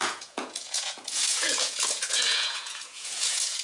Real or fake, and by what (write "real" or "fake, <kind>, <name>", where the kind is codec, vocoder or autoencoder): fake, vocoder, Vocos